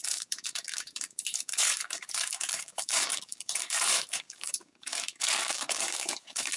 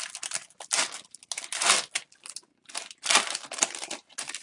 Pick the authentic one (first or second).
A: second